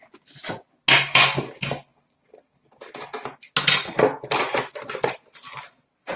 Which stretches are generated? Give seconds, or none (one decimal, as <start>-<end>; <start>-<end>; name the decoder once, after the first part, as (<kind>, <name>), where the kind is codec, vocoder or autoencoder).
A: none